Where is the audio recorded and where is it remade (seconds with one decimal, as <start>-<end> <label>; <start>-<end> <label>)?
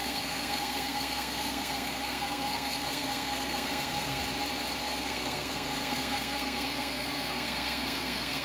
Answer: 0.0-4.2 remade; 4.2-4.8 recorded; 4.8-8.4 remade